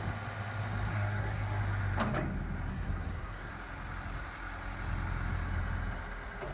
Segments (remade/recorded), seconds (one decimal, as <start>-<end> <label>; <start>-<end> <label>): 0.0-0.9 recorded; 0.9-1.6 remade; 1.6-2.7 recorded; 2.7-3.5 remade; 3.5-6.5 recorded